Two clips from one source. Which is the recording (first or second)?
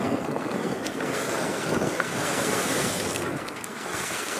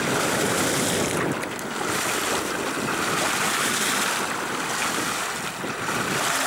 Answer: second